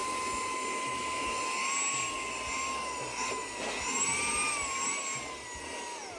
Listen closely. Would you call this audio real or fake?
real